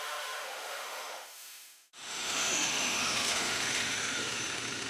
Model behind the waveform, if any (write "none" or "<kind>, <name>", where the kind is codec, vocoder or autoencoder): autoencoder, DAC-VAE